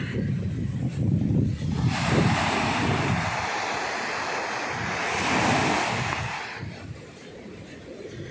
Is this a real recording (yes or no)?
no